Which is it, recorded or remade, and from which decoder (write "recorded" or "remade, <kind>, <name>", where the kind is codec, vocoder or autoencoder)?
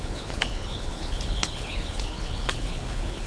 remade, codec, HILCodec